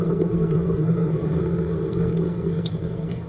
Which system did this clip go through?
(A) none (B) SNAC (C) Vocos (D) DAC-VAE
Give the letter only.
B